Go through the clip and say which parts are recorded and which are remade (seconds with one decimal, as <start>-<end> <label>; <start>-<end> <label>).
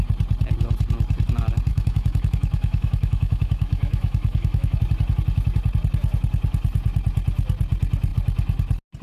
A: 0.0-1.7 recorded; 1.7-4.8 remade; 4.8-9.0 recorded